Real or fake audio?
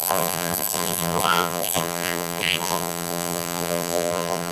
fake